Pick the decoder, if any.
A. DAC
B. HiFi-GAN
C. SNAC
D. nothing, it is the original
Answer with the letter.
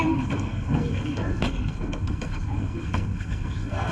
C